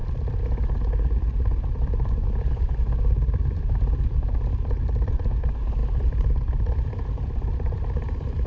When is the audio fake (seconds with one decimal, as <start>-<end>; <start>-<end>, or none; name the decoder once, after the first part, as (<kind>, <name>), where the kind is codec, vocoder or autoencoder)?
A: 0.0-8.5 (vocoder, BigVGAN v2)